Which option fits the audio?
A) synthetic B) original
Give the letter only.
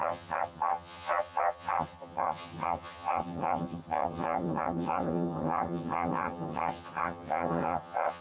A